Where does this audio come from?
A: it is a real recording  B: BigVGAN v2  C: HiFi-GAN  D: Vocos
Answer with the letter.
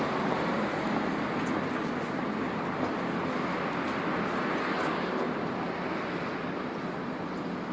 A